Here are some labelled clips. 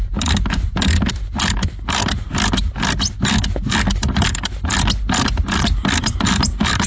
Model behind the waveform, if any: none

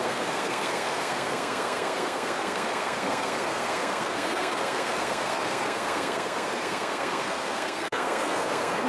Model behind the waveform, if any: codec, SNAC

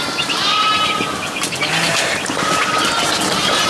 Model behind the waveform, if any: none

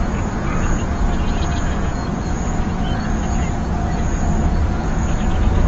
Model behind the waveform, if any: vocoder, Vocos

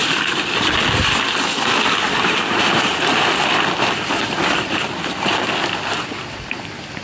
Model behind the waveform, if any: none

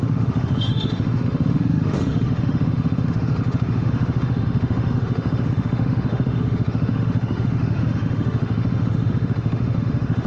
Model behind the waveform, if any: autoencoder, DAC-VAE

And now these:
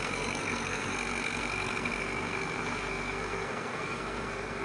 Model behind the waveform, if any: codec, SNAC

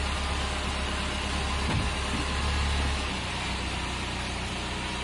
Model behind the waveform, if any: none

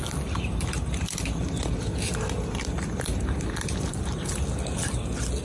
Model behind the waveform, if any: none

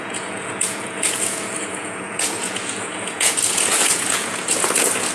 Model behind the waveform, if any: vocoder, Vocos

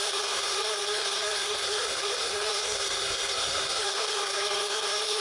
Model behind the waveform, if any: codec, SNAC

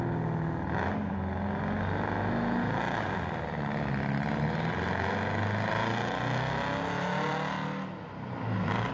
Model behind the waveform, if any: none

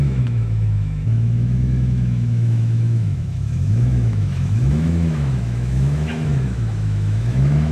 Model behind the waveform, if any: autoencoder, DAC-VAE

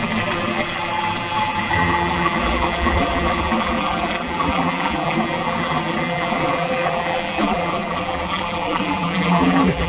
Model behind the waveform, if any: vocoder, BigVGAN v2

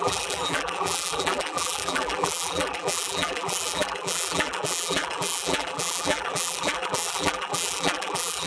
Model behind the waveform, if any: vocoder, BigVGAN v2